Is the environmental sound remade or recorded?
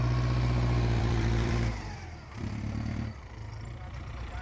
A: remade